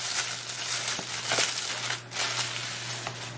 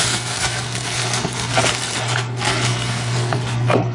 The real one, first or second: first